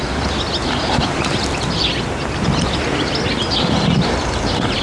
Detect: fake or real real